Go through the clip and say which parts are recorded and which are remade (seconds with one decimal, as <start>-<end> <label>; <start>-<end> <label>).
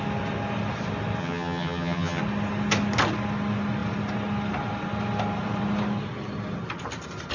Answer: 0.0-1.2 recorded; 1.2-2.2 remade; 2.2-7.3 recorded